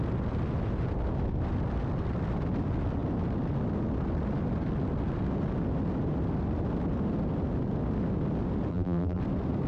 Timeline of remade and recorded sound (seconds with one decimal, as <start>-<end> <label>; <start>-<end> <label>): 0.0-8.7 recorded; 8.7-9.2 remade; 9.2-9.7 recorded